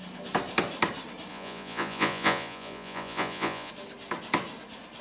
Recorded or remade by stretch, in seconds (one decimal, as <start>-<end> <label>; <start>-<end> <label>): 0.0-1.3 recorded; 1.3-3.7 remade; 3.7-5.0 recorded